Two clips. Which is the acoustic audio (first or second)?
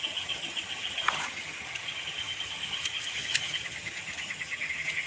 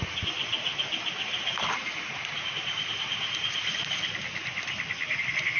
second